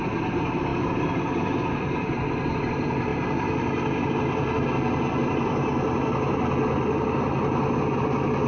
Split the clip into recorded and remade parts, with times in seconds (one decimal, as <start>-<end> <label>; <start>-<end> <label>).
0.0-8.5 recorded